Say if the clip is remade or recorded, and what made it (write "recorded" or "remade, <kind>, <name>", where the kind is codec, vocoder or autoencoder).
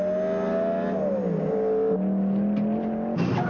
recorded